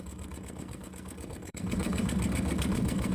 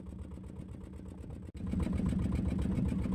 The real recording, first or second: second